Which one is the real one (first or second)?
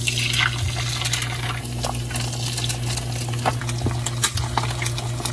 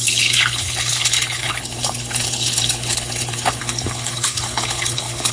first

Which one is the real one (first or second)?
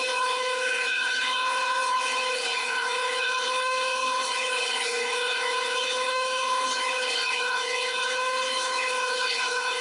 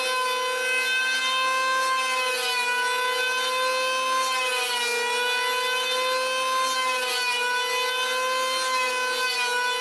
second